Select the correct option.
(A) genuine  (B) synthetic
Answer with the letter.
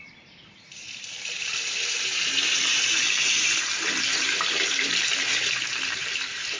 B